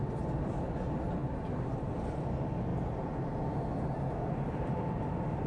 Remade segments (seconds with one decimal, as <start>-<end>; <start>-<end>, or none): none

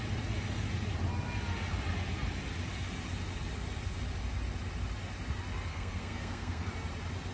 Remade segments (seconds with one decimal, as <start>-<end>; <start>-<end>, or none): 5.7-6.7

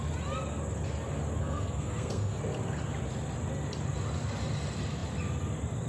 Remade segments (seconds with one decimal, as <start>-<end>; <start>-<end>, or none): 1.4-2.4

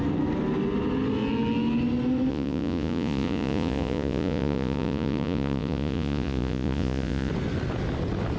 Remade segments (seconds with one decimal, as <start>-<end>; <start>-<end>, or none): 2.3-7.3

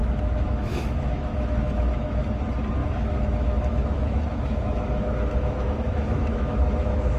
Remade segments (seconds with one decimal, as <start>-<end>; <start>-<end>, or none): 0.0-2.2; 2.8-7.2